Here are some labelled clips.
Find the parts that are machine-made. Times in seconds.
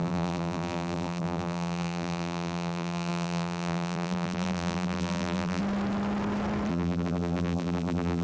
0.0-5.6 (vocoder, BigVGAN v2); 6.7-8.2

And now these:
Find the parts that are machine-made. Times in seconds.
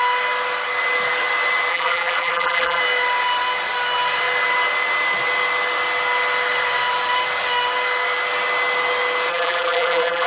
1.7-2.8 (vocoder, BigVGAN v2); 9.3-10.3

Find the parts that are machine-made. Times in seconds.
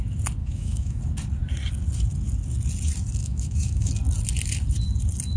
0.4-1.0 (autoencoder, DAC-VAE); 3.2-3.9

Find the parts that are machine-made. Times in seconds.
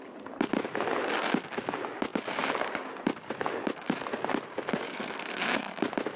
4.9-5.8 (codec, SNAC)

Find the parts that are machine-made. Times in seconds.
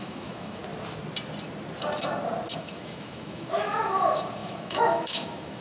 0.0-0.6 (autoencoder, DAC-VAE); 2.6-5.6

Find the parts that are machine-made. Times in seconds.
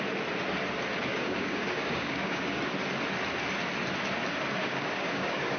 1.1-2.6 (codec, DAC); 4.6-5.6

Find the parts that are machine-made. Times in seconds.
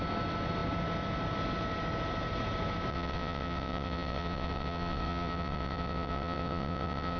2.9-7.2 (vocoder, WaveNeXt)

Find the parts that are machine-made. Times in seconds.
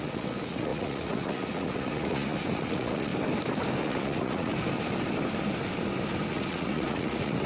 0.0-3.1 (vocoder, Vocos); 3.8-4.5; 6.3-7.5